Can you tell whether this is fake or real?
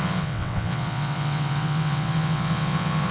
fake